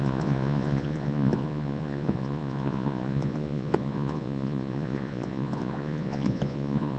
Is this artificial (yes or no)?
yes